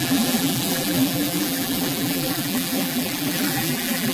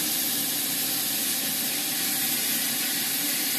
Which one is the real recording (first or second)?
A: second